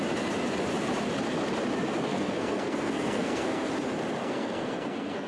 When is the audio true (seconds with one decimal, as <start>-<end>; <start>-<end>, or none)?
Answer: 0.0-2.1; 3.7-4.2